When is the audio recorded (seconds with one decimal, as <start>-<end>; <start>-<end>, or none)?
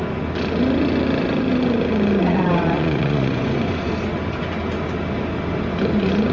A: 0.0-2.3; 3.9-6.3